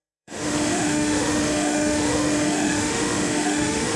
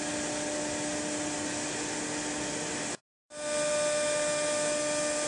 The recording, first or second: second